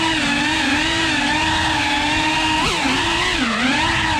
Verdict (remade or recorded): recorded